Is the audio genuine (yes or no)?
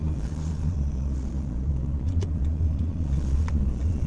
no